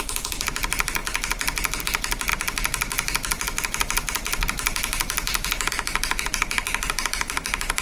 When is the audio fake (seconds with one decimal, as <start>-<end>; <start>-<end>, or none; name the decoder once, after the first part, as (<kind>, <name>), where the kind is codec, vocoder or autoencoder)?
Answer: 0.0-1.0 (vocoder, BigVGAN v2); 1.8-7.8